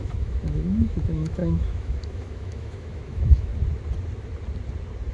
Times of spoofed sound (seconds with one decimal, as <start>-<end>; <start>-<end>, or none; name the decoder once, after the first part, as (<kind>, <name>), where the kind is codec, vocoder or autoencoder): 0.0-3.5 (autoencoder, DAC-VAE)